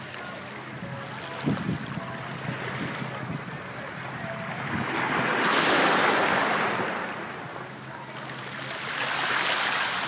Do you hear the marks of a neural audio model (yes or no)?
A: no